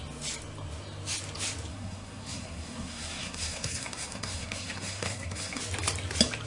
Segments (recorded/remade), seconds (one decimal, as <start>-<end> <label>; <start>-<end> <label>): 0.0-1.7 recorded; 1.7-5.6 remade; 5.6-6.5 recorded